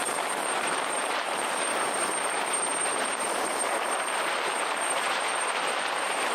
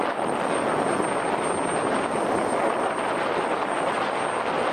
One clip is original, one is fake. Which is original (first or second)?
second